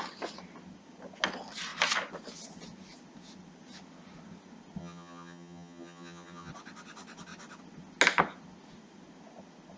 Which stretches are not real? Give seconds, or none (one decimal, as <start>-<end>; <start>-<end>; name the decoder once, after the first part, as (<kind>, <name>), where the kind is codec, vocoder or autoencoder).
4.8-6.5 (vocoder, HiFi-GAN)